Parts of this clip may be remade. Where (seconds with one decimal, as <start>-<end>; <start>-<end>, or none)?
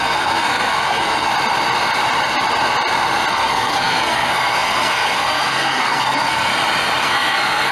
0.0-1.3; 3.3-6.5; 7.0-7.7